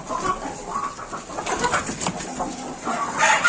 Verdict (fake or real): real